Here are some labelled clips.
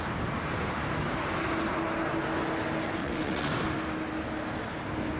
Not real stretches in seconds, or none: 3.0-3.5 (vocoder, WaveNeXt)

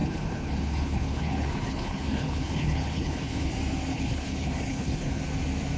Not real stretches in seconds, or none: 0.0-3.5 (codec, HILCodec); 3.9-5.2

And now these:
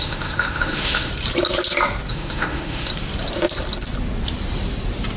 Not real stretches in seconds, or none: 0.0-1.1 (autoencoder, DAC-VAE); 2.1-2.9

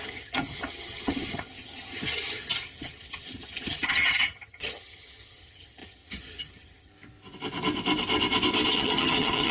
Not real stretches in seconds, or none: 0.0-6.9 (vocoder, HiFi-GAN); 8.7-9.5

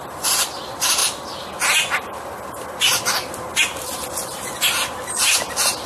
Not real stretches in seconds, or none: none

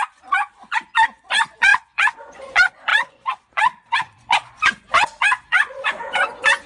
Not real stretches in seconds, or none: 0.0-6.7 (vocoder, Vocos)

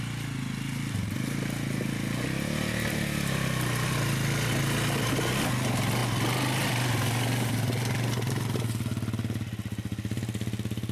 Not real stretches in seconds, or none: none

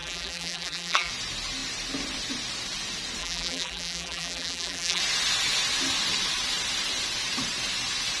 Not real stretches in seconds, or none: 0.0-1.1 (vocoder, BigVGAN v2); 3.2-5.0